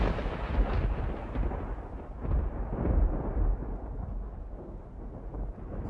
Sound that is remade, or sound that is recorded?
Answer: recorded